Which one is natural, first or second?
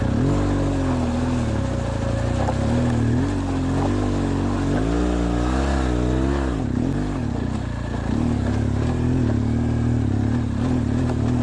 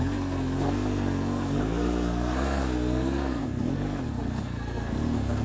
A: first